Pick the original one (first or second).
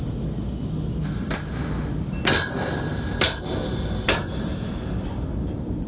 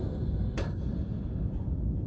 first